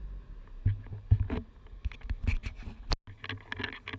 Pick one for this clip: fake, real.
real